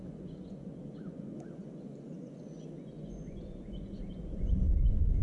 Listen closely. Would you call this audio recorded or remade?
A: remade